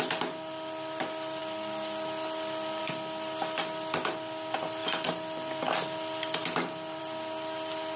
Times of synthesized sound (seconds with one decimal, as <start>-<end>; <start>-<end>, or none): none